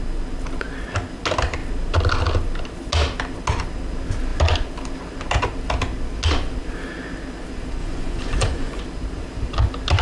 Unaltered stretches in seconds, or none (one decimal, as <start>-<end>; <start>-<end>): 0.0-7.8; 8.8-10.0